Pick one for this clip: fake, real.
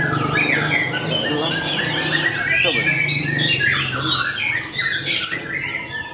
real